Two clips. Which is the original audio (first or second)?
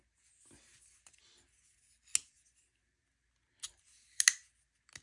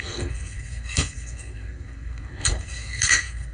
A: first